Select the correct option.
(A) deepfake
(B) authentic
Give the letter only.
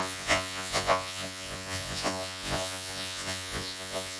A